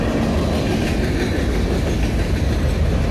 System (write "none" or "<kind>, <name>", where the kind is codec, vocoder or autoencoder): none